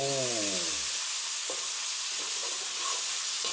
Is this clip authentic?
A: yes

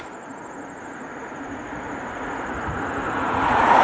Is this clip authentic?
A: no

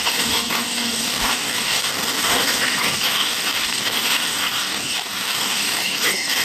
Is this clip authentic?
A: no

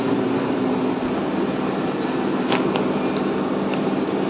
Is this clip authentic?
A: yes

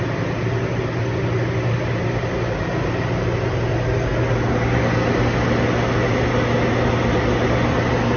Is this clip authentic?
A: yes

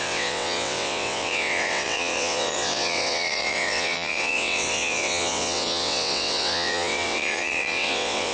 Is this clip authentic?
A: no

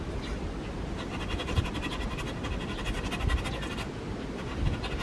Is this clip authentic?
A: yes